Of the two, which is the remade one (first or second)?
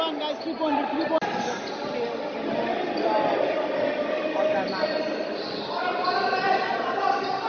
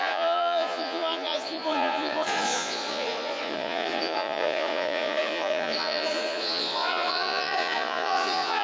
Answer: second